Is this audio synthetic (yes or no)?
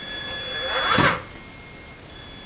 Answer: no